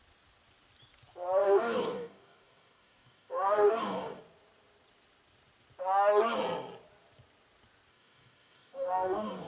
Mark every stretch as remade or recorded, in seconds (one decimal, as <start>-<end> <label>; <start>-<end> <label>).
0.0-1.4 recorded; 1.4-4.2 remade; 4.2-7.9 recorded; 7.9-9.5 remade